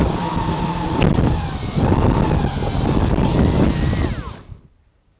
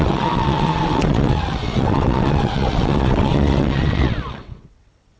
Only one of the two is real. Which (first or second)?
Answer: first